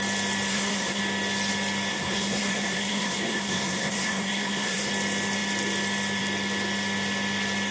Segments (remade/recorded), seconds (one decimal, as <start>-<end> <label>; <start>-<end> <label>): 0.0-0.5 recorded; 0.5-1.0 remade; 1.0-1.9 recorded; 1.9-4.9 remade; 4.9-7.7 recorded